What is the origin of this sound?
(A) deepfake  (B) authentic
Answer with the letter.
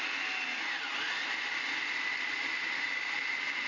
B